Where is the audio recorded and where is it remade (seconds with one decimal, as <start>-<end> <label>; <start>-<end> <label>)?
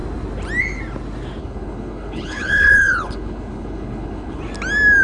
0.0-1.4 recorded; 1.4-4.4 remade; 4.4-5.0 recorded